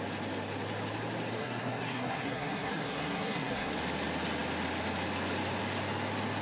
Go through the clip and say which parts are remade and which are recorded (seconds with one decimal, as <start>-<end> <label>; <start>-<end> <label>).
0.0-1.3 recorded; 1.3-3.7 remade; 3.7-6.4 recorded